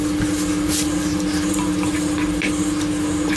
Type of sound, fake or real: real